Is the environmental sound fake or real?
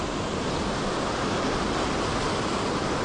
real